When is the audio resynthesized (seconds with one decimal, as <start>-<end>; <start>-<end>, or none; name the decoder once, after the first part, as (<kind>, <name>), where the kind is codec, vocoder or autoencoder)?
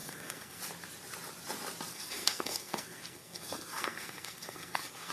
0.0-0.6 (codec, SNAC); 1.9-5.1